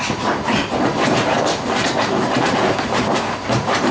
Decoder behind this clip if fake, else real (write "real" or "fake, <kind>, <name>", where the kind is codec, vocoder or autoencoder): fake, vocoder, BigVGAN v2